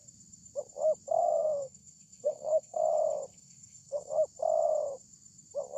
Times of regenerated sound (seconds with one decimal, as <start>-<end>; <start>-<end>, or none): 1.2-2.8; 3.3-4.1